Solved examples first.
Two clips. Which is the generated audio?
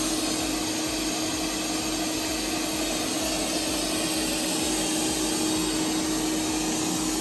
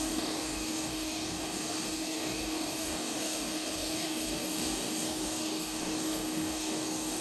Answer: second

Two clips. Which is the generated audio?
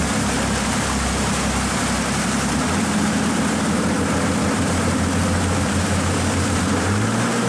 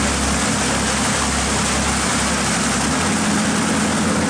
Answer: first